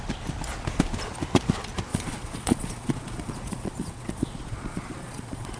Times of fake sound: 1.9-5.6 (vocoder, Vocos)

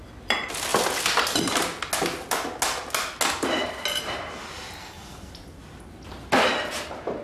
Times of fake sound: 4.8-5.3 (codec, SNAC)

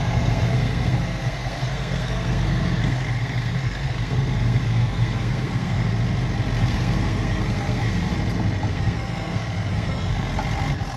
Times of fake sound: 0.0-5.9 (codec, SNAC); 6.6-8.1; 8.7-10.3

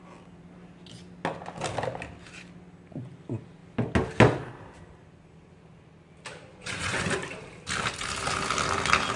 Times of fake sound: 6.5-7.0 (vocoder, Vocos)

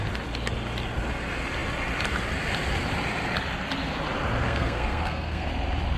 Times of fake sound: 4.4-5.5 (codec, SNAC)

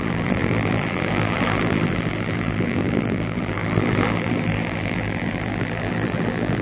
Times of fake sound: 0.0-6.6 (vocoder, BigVGAN v2)